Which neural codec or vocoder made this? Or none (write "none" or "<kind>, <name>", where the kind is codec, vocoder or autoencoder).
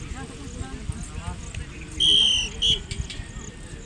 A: none